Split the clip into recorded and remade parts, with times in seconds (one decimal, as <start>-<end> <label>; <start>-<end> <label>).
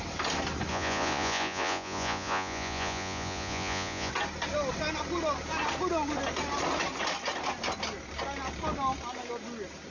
0.0-0.7 recorded; 0.7-4.1 remade; 4.1-9.9 recorded